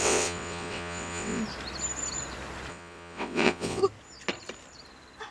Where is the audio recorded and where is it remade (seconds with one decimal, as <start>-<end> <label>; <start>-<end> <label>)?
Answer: 0.0-1.4 remade; 1.4-2.7 recorded; 2.7-3.8 remade; 3.8-5.3 recorded